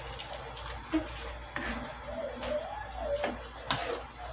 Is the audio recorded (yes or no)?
yes